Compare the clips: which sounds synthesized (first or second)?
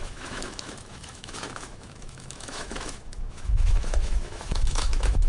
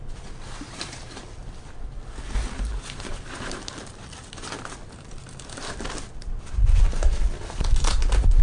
first